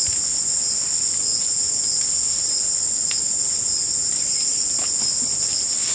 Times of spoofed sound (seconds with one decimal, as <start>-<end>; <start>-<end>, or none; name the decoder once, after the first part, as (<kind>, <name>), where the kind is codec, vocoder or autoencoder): 1.3-2.0 (vocoder, Vocos)